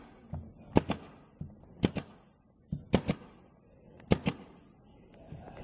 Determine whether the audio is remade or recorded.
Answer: recorded